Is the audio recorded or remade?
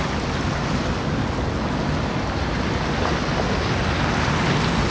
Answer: recorded